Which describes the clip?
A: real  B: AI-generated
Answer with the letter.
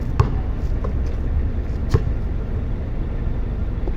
A